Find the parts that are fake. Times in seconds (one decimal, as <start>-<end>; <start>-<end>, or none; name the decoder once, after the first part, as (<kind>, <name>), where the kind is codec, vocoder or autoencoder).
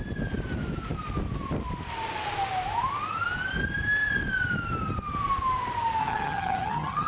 6.0-7.1 (vocoder, HiFi-GAN)